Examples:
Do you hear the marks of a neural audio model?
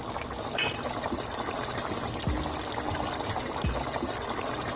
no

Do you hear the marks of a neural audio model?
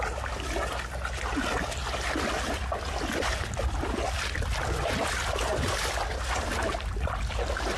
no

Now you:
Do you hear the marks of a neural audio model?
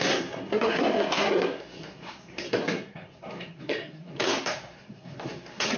yes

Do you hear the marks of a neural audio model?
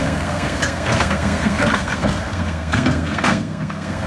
yes